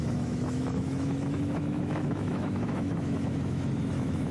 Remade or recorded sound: remade